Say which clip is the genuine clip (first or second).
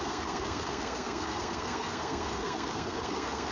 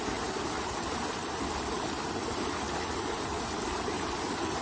second